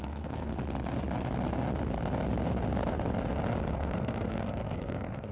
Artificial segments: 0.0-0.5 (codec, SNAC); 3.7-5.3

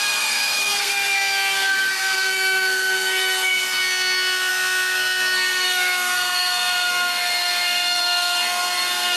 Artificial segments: 0.0-9.2 (codec, SNAC)

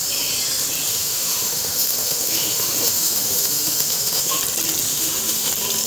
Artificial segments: 0.9-4.4 (autoencoder, DAC-VAE); 4.9-5.5

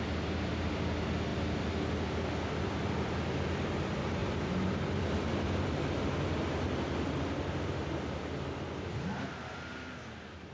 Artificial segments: none

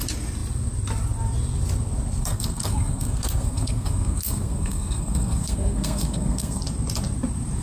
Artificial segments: 2.2-6.6 (codec, SNAC)

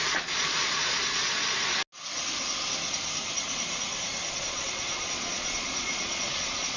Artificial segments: 0.0-1.2 (vocoder, Vocos); 4.3-6.8